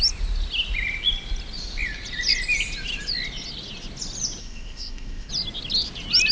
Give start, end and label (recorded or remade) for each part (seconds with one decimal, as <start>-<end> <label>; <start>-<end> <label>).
0.0-4.4 recorded; 4.4-5.3 remade; 5.3-6.3 recorded